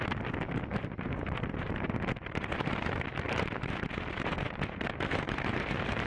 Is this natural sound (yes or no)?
no